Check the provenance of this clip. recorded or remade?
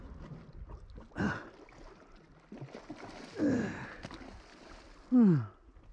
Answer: recorded